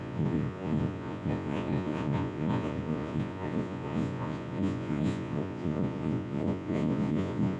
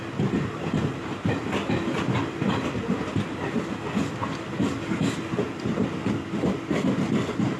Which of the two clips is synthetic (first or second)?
first